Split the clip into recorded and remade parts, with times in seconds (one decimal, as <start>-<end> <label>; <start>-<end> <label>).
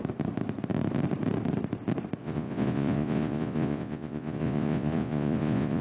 0.0-2.2 recorded; 2.2-5.8 remade